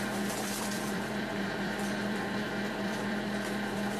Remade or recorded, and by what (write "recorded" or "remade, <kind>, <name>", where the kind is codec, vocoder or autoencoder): remade, vocoder, BigVGAN v2